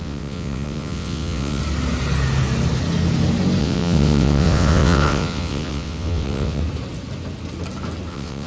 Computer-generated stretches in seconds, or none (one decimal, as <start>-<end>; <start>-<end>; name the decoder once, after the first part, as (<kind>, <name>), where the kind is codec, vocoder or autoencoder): 0.0-1.6 (vocoder, WaveNeXt); 3.6-6.6; 8.1-8.5